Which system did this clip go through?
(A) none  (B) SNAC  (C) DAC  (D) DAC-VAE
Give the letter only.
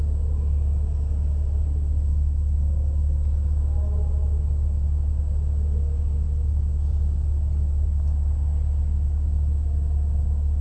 A